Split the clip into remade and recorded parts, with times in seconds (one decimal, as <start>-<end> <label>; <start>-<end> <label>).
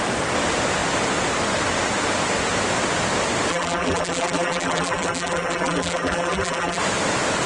0.0-3.5 recorded; 3.5-6.8 remade; 6.8-7.5 recorded